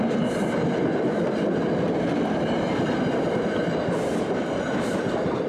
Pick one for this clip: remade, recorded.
recorded